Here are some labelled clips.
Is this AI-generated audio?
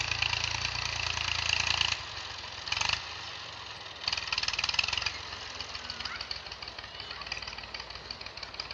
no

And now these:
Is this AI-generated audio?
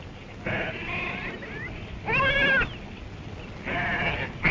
no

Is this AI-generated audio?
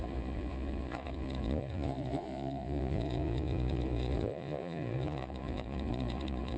yes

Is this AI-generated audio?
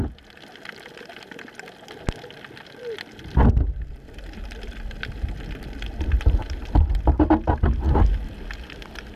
no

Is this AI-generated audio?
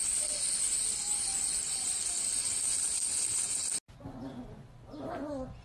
no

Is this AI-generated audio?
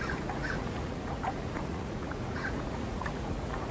yes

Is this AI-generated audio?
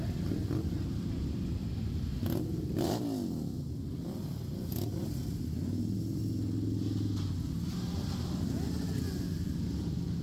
no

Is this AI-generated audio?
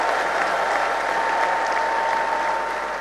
no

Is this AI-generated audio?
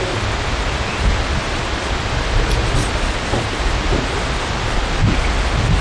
no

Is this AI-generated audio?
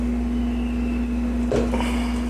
no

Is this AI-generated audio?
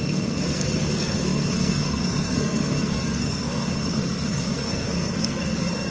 yes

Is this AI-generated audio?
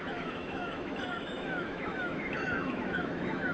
yes